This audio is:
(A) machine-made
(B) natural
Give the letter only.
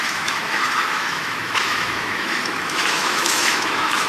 A